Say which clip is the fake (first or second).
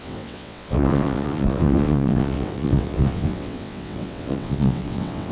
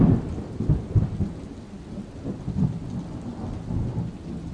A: first